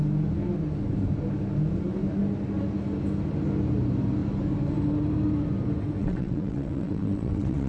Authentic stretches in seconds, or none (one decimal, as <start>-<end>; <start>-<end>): 0.0-6.0